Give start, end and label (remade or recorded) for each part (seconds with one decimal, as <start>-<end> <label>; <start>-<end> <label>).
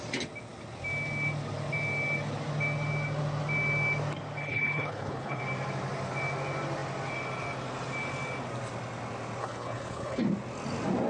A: 0.0-4.4 recorded; 4.4-5.4 remade; 5.4-9.4 recorded; 9.4-10.2 remade; 10.2-11.1 recorded